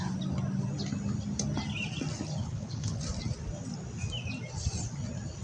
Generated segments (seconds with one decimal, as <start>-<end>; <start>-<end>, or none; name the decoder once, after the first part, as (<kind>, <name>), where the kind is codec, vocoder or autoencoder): 2.4-3.0 (codec, HILCodec)